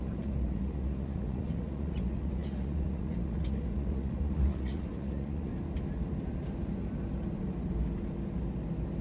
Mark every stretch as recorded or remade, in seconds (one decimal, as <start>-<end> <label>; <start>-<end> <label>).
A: 0.0-5.5 remade; 5.5-9.0 recorded